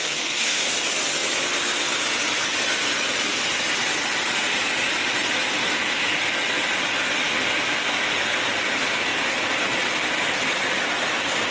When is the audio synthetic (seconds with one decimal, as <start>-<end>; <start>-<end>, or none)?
0.0-0.7